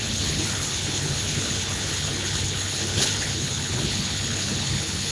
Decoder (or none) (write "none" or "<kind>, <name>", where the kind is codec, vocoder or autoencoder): codec, HILCodec